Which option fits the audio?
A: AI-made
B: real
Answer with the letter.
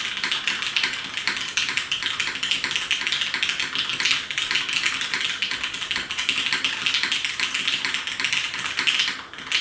B